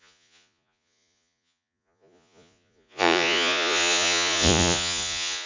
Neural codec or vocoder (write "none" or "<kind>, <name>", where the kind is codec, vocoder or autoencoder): vocoder, Vocos